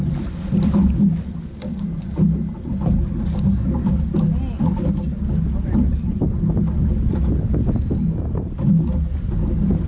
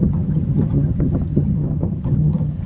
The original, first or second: first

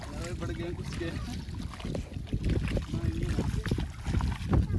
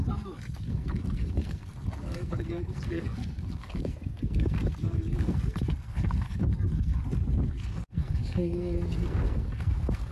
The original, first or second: first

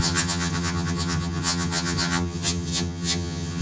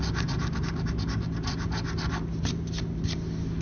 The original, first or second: second